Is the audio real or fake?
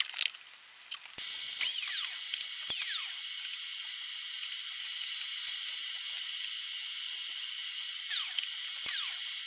real